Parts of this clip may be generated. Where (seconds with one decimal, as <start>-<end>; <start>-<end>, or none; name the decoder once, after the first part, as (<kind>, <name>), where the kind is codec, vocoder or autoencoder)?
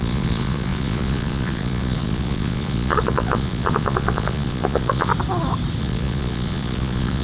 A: 0.0-5.1 (vocoder, Vocos); 5.8-7.2